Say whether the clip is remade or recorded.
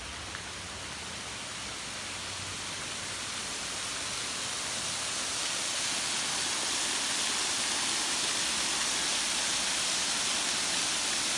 recorded